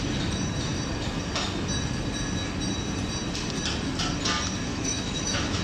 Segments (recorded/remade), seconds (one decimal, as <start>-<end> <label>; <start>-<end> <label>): 0.0-4.7 recorded; 4.7-5.6 remade